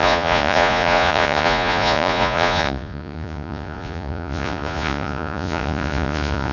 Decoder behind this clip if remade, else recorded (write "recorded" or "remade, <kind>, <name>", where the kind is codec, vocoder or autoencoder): remade, vocoder, Vocos